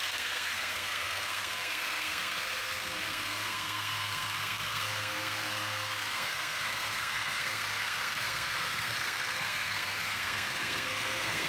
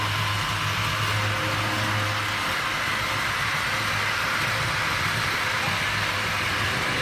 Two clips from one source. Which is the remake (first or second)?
first